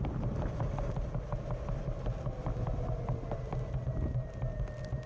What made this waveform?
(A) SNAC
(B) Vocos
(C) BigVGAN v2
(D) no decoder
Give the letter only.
D